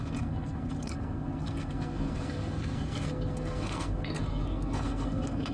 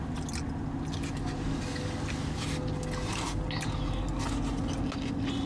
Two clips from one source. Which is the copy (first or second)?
first